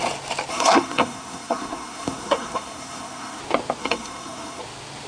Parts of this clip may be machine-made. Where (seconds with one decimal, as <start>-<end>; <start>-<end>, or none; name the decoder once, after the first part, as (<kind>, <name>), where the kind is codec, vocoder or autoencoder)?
0.5-3.4 (codec, SNAC); 3.8-4.6